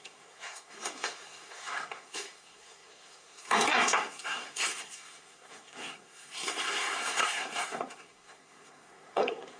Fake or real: fake